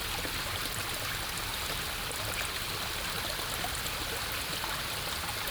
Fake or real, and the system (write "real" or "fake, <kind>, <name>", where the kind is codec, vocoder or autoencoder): real